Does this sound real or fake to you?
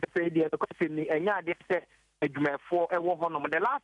real